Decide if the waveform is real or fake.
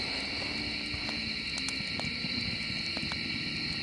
real